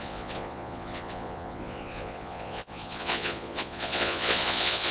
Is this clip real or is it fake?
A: fake